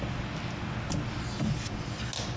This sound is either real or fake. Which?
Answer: real